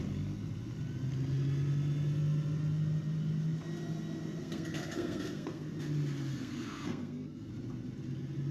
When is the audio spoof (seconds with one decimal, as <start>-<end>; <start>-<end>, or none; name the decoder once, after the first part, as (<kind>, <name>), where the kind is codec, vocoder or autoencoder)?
4.4-5.7 (codec, SNAC); 6.3-7.5